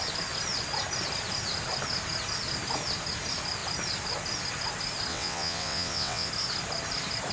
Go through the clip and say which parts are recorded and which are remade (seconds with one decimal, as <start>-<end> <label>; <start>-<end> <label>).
0.0-5.1 recorded; 5.1-6.3 remade; 6.3-7.3 recorded